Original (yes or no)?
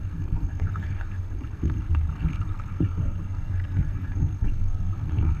no